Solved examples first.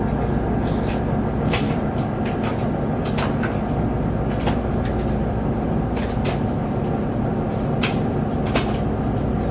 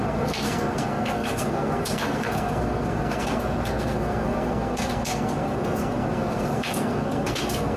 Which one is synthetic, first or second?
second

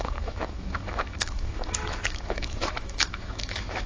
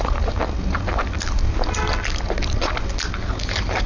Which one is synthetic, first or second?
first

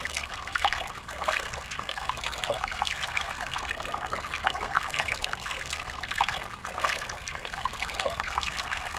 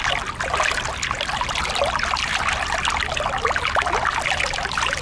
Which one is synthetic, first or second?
first